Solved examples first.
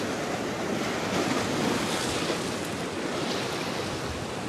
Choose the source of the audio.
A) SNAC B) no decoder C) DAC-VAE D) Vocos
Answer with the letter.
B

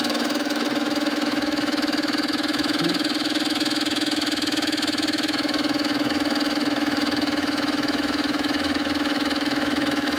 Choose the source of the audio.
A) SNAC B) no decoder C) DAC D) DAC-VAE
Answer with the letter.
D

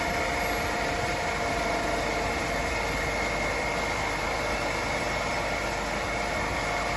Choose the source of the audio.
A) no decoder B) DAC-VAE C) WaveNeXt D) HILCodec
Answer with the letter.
A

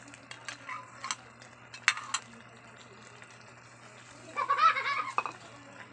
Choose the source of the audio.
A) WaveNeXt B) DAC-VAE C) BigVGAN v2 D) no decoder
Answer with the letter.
D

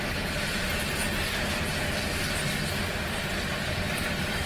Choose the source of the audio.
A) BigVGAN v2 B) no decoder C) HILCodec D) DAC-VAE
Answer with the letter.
B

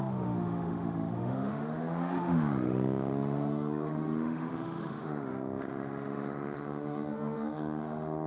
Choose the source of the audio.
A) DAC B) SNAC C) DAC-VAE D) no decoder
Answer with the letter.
C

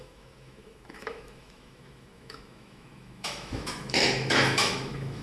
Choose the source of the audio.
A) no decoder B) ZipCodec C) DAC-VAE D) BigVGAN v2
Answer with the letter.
C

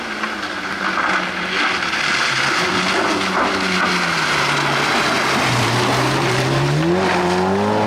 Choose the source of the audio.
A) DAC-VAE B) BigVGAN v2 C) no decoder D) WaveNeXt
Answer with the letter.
C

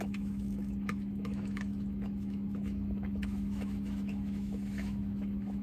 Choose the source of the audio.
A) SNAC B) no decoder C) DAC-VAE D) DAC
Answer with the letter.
C